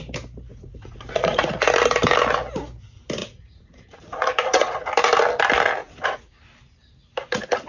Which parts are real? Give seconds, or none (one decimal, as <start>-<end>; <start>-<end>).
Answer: 0.0-0.5; 1.5-3.2; 4.9-5.8; 6.4-7.7